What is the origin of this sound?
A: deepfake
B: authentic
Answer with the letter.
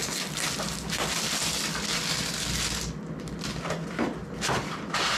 B